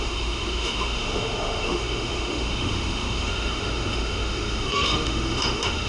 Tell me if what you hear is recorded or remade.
remade